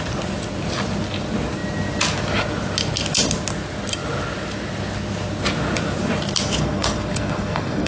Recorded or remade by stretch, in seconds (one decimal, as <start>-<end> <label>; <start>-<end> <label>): 0.0-6.6 recorded; 6.6-7.9 remade